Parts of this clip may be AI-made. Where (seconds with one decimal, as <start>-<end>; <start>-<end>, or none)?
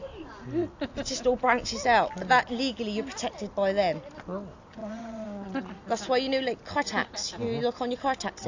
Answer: 4.8-5.6